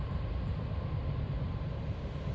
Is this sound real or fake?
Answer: real